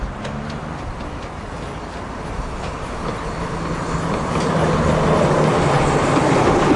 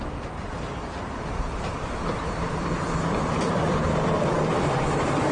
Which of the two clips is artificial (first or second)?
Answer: second